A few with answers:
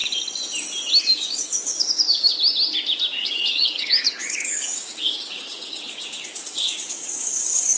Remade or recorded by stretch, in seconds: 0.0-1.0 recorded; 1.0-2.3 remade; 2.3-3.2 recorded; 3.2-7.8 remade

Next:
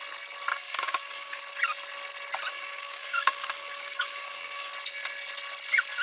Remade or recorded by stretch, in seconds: 0.0-0.5 recorded; 0.5-1.4 remade; 1.4-2.5 recorded; 2.5-4.7 remade; 4.7-6.0 recorded